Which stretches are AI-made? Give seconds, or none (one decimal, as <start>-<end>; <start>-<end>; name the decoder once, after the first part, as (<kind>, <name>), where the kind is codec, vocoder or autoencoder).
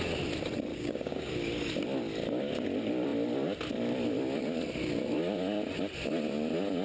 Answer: 0.7-1.3 (codec, DAC)